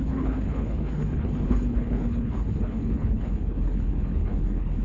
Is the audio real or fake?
fake